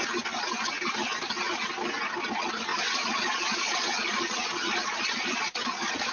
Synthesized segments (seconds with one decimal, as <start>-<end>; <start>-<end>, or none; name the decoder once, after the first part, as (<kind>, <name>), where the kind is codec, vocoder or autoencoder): 2.7-6.1 (vocoder, Vocos)